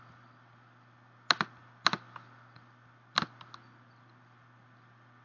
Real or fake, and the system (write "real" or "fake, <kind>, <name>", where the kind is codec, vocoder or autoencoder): real